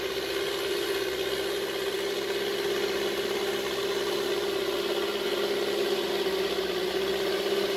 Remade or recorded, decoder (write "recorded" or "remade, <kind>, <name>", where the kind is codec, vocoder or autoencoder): recorded